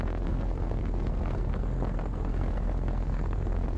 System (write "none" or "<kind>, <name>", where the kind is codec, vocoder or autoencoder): codec, SNAC